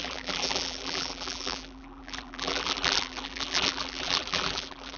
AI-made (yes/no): yes